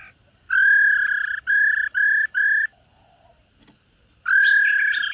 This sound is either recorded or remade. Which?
remade